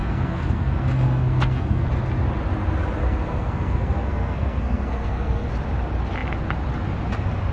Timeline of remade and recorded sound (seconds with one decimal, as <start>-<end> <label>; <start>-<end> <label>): 0.0-1.9 remade; 1.9-3.0 recorded; 3.0-5.5 remade; 5.5-7.5 recorded